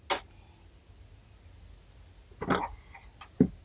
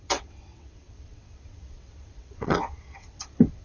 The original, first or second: first